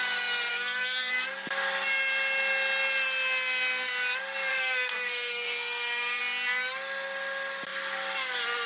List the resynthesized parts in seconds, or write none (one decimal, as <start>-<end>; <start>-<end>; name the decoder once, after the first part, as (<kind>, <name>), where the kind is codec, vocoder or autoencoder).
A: 0.5-1.1 (codec, SNAC); 4.5-6.2